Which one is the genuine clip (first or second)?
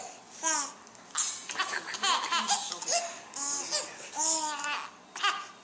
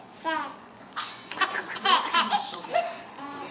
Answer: first